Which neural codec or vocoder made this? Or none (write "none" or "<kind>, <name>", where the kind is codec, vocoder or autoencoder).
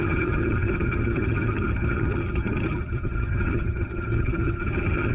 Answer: vocoder, HiFi-GAN